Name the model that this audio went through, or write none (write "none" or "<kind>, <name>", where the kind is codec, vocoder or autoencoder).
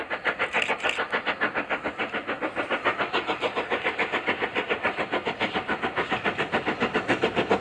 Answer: none